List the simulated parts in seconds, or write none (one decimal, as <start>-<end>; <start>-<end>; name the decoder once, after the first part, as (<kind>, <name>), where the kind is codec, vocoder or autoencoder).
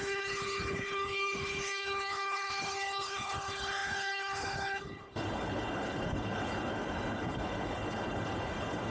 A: 0.0-8.9 (codec, HILCodec)